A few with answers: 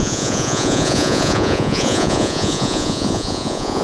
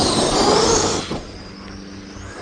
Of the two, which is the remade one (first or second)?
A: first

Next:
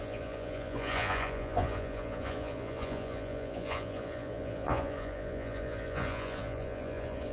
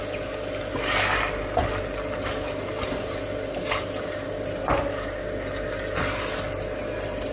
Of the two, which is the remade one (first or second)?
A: first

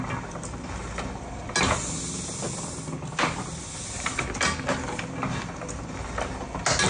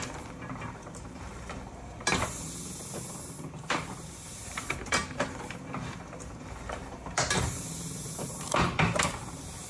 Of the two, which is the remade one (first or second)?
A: second